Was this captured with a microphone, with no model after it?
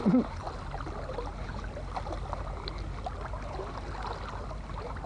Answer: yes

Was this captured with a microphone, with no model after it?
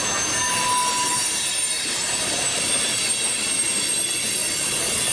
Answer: yes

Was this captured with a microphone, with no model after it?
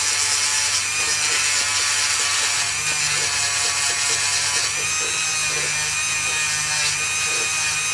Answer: yes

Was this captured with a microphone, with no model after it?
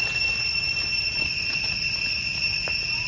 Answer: yes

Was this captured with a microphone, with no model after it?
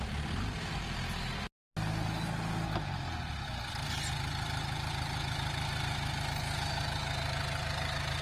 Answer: yes